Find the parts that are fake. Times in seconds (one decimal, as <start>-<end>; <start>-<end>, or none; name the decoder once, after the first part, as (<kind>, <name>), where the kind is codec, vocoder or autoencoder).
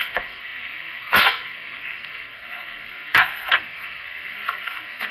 0.0-5.1 (codec, SNAC)